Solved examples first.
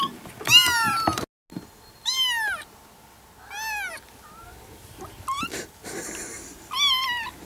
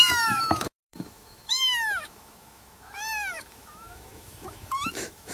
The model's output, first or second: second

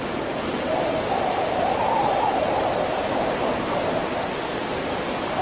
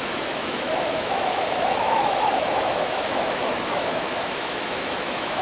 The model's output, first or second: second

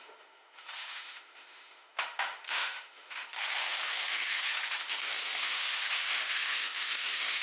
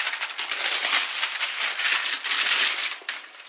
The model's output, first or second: first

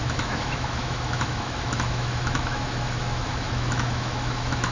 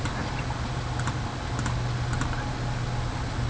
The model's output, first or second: first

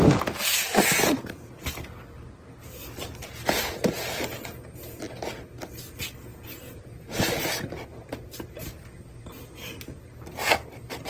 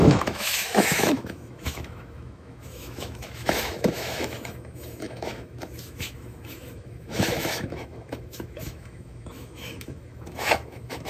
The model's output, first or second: second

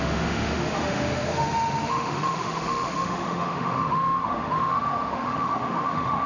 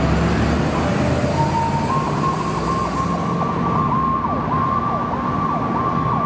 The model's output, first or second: first